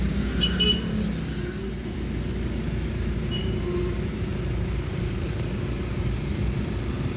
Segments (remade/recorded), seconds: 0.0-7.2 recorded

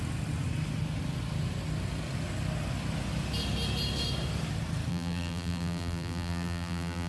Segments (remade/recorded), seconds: 0.0-4.9 recorded; 4.9-7.1 remade

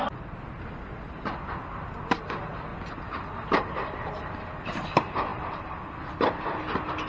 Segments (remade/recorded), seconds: 0.0-5.3 recorded; 5.3-6.0 remade; 6.0-7.1 recorded

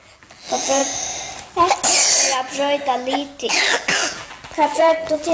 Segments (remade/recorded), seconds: 0.0-0.8 remade; 0.8-3.5 recorded; 3.5-5.3 remade

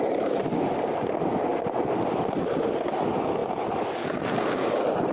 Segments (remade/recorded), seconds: 0.0-5.1 remade

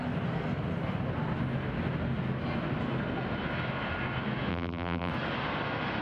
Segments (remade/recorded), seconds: 0.0-4.5 recorded; 4.5-5.1 remade; 5.1-6.0 recorded

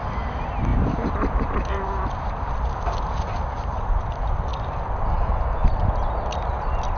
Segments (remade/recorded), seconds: 0.0-0.7 recorded; 0.7-3.8 remade; 3.8-7.0 recorded

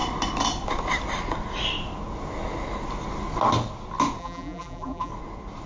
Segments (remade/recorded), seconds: 0.0-4.2 recorded; 4.2-5.1 remade; 5.1-5.7 recorded